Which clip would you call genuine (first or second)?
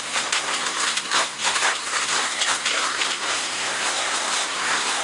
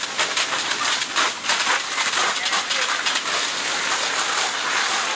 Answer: second